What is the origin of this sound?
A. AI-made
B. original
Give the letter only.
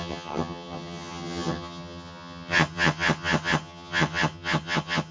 A